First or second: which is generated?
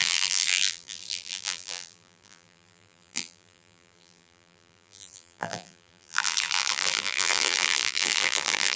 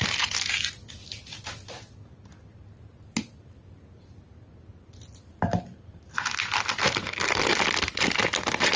first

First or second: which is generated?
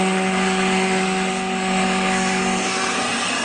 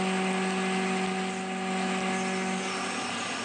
first